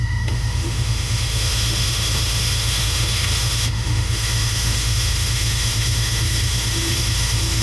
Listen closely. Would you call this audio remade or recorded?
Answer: remade